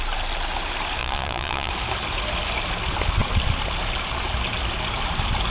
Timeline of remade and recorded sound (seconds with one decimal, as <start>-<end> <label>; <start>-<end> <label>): 0.0-1.0 recorded; 1.0-1.7 remade; 1.7-5.5 recorded